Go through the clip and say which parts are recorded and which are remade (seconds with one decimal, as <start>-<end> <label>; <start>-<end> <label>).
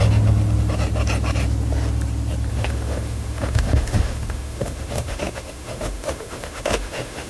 0.0-2.5 recorded; 2.5-7.3 remade